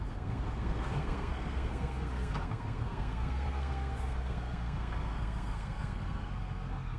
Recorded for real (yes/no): no